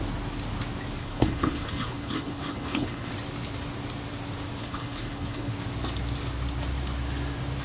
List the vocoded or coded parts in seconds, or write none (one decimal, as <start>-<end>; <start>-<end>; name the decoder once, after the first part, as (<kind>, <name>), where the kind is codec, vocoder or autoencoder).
1.0-3.1 (codec, HILCodec); 4.6-5.5